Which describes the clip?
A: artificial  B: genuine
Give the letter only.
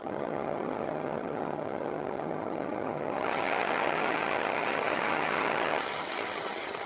A